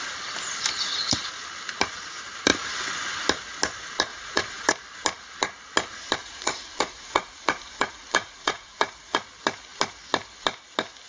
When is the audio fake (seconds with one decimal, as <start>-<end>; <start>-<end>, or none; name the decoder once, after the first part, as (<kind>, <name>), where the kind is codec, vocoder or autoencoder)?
4.1-4.7 (vocoder, Vocos); 6.2-9.2